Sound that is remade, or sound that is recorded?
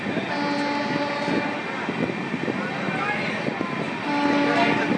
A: recorded